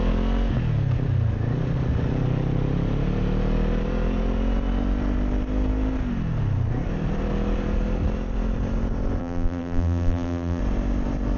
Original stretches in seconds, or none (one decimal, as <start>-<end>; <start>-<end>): 0.0-9.2; 10.6-11.4